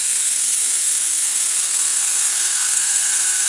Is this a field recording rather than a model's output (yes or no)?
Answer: no